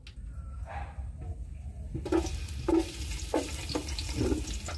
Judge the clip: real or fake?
real